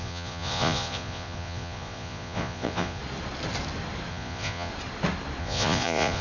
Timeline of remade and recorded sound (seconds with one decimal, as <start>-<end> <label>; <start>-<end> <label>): 0.0-3.0 remade; 3.0-4.1 recorded; 4.1-4.7 remade; 4.7-5.4 recorded; 5.4-6.2 remade